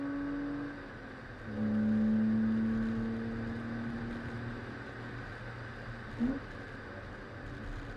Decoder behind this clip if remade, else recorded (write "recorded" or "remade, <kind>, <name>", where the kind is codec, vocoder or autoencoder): recorded